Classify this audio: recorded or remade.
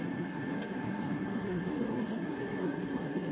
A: remade